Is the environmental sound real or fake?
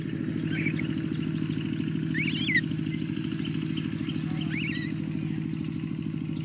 real